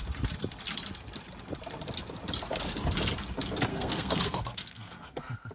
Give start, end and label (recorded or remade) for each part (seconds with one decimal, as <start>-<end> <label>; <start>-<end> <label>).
0.0-3.7 recorded; 3.7-5.5 remade